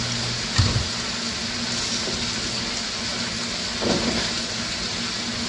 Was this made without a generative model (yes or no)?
yes